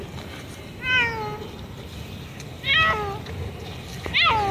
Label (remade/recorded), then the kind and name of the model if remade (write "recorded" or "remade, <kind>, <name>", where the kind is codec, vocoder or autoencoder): recorded